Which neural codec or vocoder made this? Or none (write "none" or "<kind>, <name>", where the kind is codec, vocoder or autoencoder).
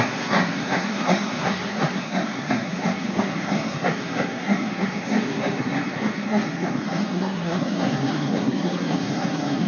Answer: codec, SNAC